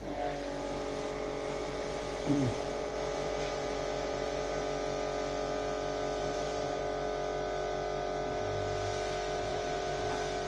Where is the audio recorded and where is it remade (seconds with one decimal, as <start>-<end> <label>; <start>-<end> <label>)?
0.0-1.6 recorded; 1.6-4.6 remade; 4.6-6.2 recorded; 6.2-6.8 remade; 6.8-9.5 recorded; 9.5-10.1 remade; 10.1-10.5 recorded